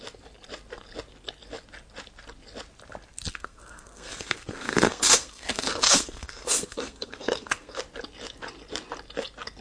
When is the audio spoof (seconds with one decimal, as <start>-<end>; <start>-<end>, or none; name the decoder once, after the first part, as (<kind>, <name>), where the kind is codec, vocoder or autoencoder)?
3.3-7.8 (codec, SNAC)